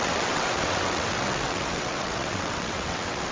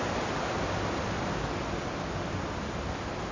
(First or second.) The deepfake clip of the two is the first